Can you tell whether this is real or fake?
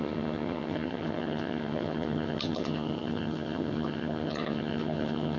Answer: fake